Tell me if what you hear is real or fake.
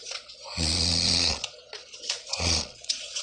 fake